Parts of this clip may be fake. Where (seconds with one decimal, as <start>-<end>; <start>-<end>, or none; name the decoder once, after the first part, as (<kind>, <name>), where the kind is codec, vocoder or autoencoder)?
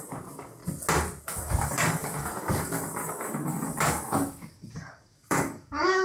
0.0-0.6 (codec, DAC); 1.2-6.0